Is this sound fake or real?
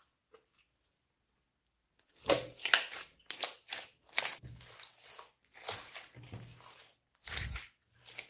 real